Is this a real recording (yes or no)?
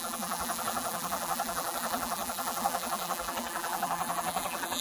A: no